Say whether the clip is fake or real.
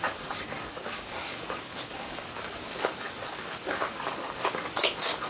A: fake